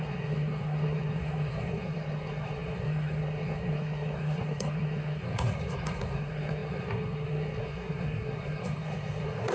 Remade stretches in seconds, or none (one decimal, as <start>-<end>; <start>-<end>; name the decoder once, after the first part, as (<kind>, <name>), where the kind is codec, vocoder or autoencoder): 0.0-9.5 (codec, SNAC)